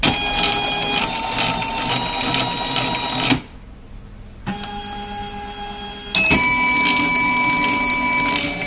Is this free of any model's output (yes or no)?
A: yes